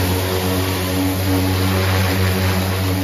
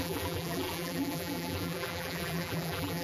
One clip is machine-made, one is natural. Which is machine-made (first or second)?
second